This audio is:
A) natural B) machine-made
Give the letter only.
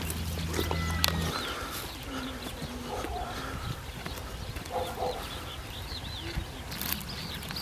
A